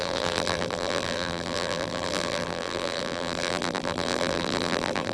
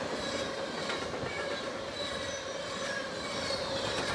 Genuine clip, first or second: second